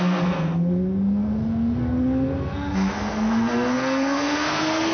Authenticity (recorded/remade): remade